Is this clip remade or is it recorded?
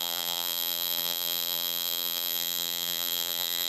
remade